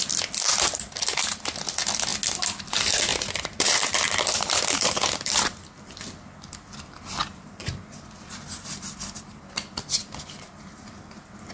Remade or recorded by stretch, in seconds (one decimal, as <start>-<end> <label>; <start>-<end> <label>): 0.0-3.1 recorded; 3.1-5.4 remade; 5.4-7.2 recorded; 7.2-7.7 remade; 7.7-11.5 recorded